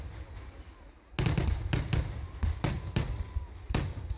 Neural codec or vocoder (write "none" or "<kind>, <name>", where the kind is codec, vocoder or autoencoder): none